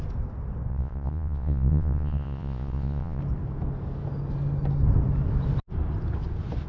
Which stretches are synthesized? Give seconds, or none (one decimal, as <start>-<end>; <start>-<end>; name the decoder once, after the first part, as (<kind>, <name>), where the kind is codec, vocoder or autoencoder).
0.7-3.2 (vocoder, Vocos)

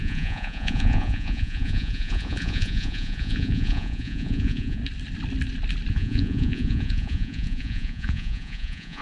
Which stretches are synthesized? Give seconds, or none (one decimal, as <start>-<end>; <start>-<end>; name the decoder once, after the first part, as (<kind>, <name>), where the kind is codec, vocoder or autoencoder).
0.0-4.8 (vocoder, Vocos); 5.9-9.0